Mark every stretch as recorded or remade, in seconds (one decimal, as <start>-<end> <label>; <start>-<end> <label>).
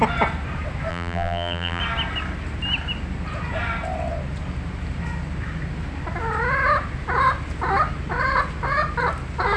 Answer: 0.0-0.9 recorded; 0.9-1.8 remade; 1.8-9.6 recorded